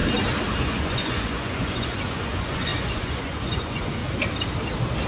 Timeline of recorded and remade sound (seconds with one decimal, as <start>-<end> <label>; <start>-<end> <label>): 0.0-0.6 recorded; 0.6-4.0 remade; 4.0-5.1 recorded